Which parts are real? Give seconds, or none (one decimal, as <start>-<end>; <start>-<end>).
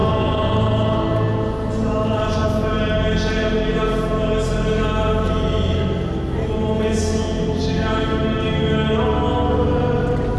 0.0-10.4